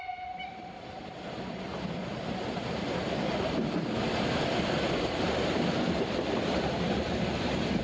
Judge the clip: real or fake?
real